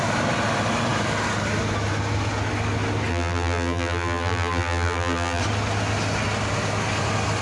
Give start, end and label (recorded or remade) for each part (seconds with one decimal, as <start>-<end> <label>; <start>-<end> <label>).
0.0-3.1 recorded; 3.1-5.4 remade; 5.4-7.4 recorded

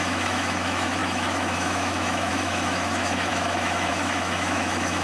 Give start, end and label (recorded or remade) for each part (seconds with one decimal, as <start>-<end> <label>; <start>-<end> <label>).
0.0-5.0 remade